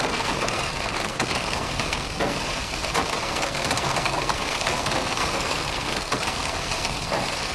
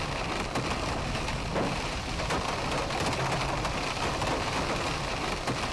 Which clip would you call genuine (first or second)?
second